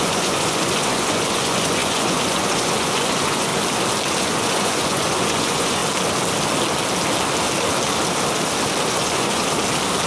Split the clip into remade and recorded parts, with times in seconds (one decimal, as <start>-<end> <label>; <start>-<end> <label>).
0.0-3.5 remade; 3.5-4.2 recorded; 4.2-5.8 remade; 5.8-8.9 recorded; 8.9-9.4 remade; 9.4-10.1 recorded